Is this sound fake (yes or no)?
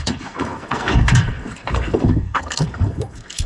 yes